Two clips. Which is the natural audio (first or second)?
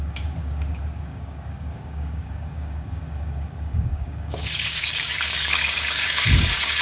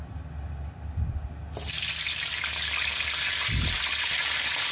second